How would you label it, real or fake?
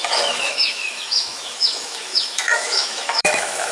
fake